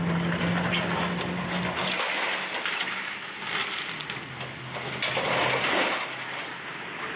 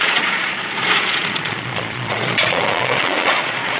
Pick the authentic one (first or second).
first